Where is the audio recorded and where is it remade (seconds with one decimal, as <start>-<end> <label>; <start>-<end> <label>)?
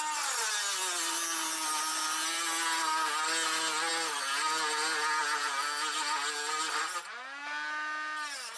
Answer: 0.0-8.6 recorded